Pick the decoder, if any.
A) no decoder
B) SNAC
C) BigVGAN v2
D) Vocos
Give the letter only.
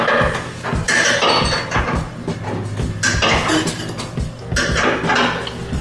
A